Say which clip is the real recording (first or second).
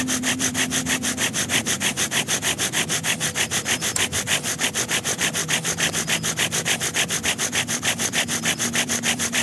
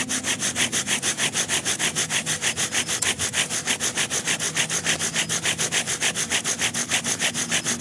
second